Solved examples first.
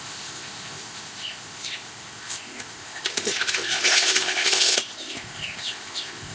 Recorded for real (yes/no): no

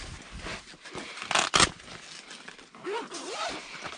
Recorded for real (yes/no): yes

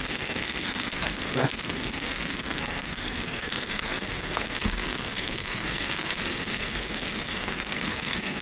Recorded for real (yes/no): no